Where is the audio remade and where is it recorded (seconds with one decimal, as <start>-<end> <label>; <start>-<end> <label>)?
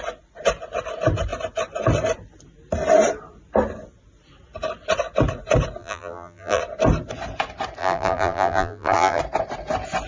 0.0-5.8 recorded; 5.8-6.6 remade; 6.6-7.8 recorded; 7.8-9.2 remade; 9.2-10.1 recorded